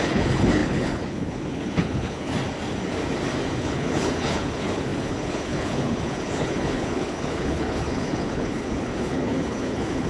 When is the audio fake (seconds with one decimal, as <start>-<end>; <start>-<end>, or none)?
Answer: 0.0-2.3; 3.6-10.1